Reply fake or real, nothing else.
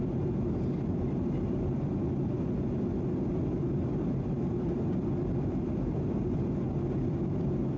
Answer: real